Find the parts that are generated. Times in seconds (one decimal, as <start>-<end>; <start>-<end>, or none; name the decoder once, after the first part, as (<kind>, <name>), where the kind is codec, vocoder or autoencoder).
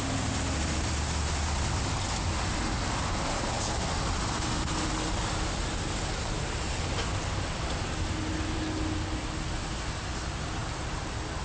none